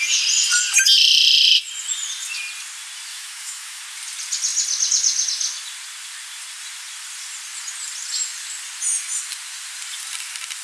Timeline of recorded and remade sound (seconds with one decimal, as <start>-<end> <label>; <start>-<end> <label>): 0.0-3.1 recorded; 3.1-3.8 remade; 3.8-10.6 recorded

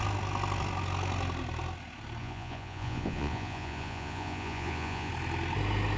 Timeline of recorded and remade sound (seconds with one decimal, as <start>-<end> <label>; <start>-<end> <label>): 0.0-2.2 recorded; 2.2-5.1 remade; 5.1-6.0 recorded

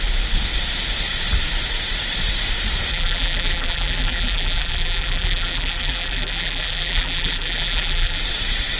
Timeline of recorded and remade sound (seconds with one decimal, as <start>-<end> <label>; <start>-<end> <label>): 0.0-2.9 recorded; 2.9-8.2 remade; 8.2-8.8 recorded